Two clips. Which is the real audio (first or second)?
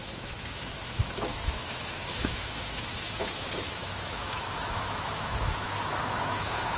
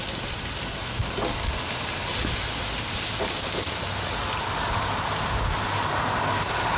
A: second